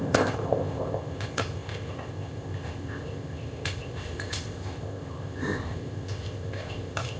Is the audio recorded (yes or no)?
no